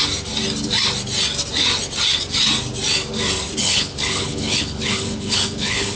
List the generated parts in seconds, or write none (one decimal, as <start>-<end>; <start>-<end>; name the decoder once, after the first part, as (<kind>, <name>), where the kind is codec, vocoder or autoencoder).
3.6-6.0 (codec, HILCodec)

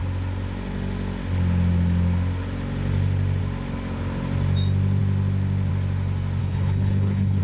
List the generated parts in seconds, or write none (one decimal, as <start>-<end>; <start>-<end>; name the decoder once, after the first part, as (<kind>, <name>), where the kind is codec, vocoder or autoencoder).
6.4-7.4 (codec, HILCodec)

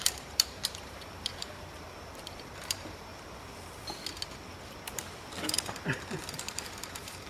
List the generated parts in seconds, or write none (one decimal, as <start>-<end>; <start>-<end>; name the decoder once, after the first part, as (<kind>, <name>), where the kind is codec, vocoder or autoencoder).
0.0-3.1 (vocoder, BigVGAN v2); 6.4-7.3

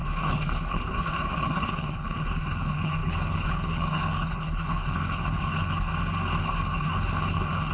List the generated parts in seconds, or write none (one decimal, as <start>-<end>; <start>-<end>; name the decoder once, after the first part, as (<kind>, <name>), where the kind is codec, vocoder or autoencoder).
0.0-5.9 (codec, HILCodec); 6.4-7.7

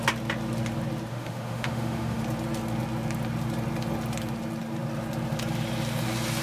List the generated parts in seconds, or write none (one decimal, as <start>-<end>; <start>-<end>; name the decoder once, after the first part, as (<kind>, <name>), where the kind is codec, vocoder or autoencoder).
1.1-2.2 (autoencoder, DAC-VAE)